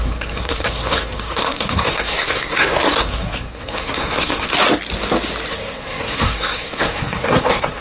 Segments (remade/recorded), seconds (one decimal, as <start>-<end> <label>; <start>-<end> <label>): 0.0-4.5 remade; 4.5-5.5 recorded; 5.5-7.8 remade

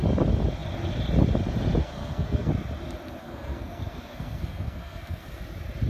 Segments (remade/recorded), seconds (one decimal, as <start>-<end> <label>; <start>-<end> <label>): 0.0-1.8 recorded; 1.8-2.5 remade; 2.5-3.2 recorded; 3.2-5.4 remade; 5.4-5.9 recorded

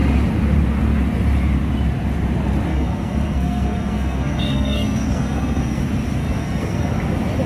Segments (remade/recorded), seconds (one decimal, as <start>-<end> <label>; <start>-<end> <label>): 0.0-2.7 recorded; 2.7-5.8 remade; 5.8-6.2 recorded; 6.2-6.9 remade; 6.9-7.5 recorded

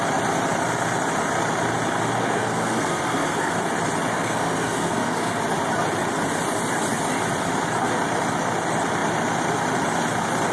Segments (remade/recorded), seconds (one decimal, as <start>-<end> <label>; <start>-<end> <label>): 0.0-2.2 recorded; 2.2-3.5 remade; 3.5-4.1 recorded; 4.1-5.4 remade; 5.4-10.5 recorded

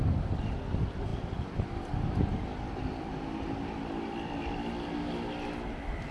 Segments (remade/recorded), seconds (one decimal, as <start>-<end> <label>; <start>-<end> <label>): 0.0-6.1 recorded

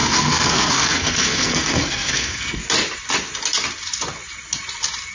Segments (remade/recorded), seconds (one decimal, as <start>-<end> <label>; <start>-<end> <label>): 0.0-2.6 remade; 2.6-5.1 recorded

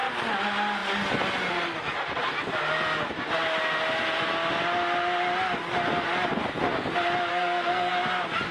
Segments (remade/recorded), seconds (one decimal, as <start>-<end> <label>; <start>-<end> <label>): 0.0-7.3 recorded; 7.3-7.9 remade; 7.9-8.5 recorded

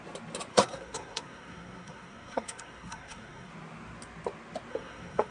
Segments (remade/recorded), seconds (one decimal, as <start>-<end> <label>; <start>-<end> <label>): 0.0-0.5 recorded; 0.5-3.5 remade; 3.5-4.7 recorded; 4.7-5.3 remade